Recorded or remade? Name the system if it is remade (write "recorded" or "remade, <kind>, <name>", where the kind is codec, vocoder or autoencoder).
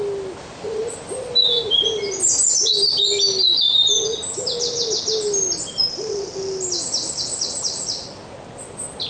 recorded